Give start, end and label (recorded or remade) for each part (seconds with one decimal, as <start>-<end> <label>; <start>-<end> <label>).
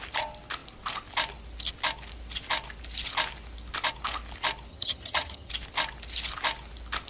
0.0-4.7 recorded; 4.7-5.5 remade; 5.5-7.1 recorded